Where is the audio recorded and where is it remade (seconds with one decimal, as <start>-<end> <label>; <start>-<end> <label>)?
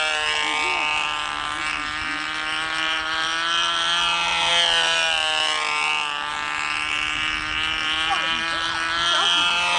0.0-9.8 recorded